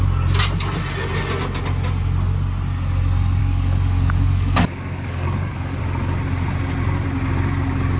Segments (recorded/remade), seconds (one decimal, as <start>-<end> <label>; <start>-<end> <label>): 0.0-3.4 recorded; 3.4-5.8 remade; 5.8-8.0 recorded